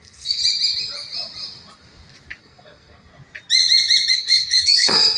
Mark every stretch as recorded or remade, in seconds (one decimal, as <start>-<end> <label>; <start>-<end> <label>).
0.0-0.4 remade; 0.4-2.4 recorded; 2.4-3.1 remade; 3.1-4.1 recorded; 4.1-5.2 remade